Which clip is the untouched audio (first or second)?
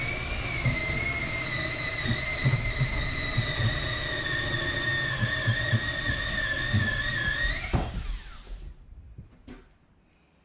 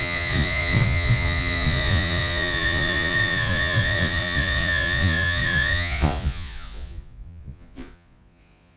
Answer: first